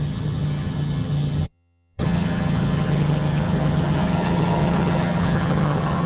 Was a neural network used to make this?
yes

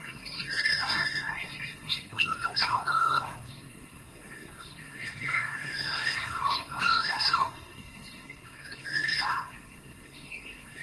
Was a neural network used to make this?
yes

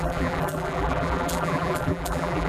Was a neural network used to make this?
yes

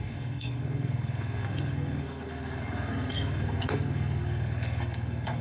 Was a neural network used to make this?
yes